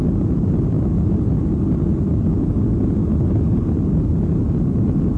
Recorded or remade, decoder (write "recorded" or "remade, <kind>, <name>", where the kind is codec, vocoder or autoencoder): recorded